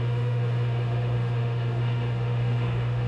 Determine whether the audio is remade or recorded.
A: remade